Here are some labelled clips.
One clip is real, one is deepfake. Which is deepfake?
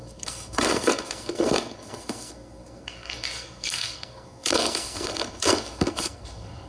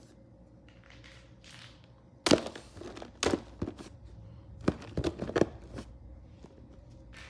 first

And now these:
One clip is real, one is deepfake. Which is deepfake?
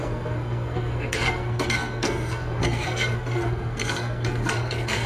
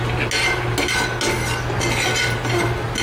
first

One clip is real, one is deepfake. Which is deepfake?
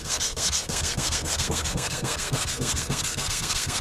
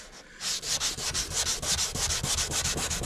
first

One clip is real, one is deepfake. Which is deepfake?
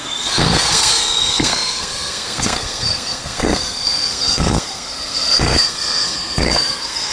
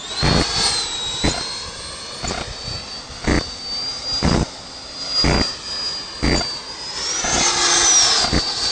first